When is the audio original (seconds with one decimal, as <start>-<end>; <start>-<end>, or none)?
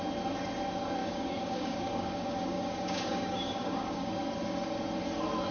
0.0-1.0; 4.3-5.5